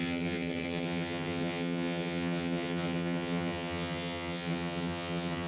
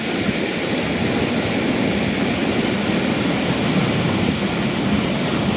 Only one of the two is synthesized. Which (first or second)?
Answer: first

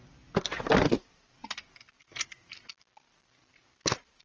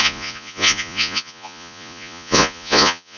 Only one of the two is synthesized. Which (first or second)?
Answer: second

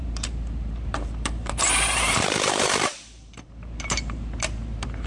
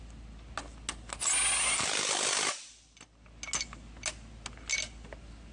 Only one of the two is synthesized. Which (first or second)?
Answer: first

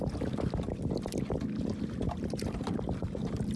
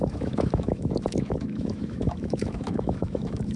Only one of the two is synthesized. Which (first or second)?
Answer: second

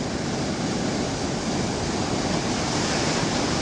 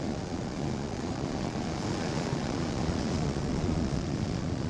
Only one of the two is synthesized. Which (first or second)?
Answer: second